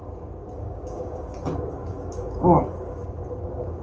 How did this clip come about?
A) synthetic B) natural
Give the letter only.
A